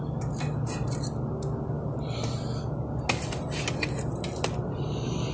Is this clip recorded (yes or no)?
yes